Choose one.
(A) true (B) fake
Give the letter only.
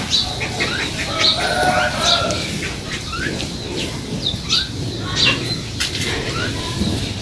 A